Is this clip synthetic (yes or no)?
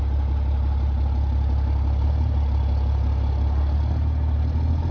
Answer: no